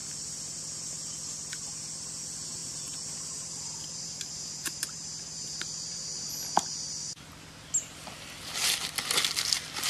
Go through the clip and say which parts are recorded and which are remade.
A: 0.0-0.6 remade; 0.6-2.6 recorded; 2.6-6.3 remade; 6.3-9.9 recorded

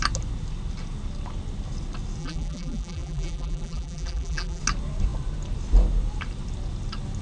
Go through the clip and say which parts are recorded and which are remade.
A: 0.0-2.2 recorded; 2.2-4.6 remade; 4.6-7.2 recorded

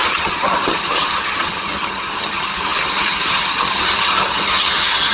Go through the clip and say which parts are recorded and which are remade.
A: 0.0-5.1 remade

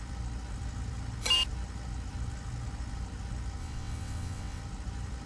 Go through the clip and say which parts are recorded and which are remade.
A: 0.0-3.6 recorded; 3.6-4.6 remade; 4.6-5.3 recorded